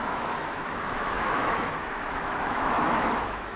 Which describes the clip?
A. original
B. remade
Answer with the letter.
B